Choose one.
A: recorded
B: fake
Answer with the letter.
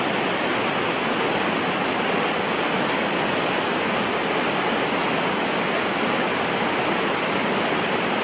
A